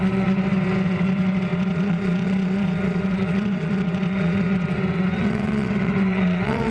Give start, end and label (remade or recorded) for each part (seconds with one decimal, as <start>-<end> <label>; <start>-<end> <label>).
0.0-6.7 remade